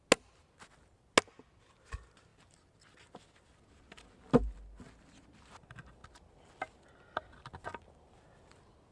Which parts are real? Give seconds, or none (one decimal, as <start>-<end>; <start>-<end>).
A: 0.0-8.9